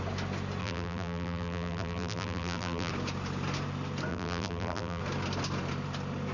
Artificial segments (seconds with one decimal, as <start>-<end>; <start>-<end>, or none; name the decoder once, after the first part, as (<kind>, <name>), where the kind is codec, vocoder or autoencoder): 0.6-2.9 (vocoder, BigVGAN v2); 4.1-5.0